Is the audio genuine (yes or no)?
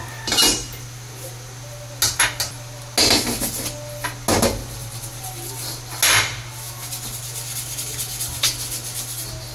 yes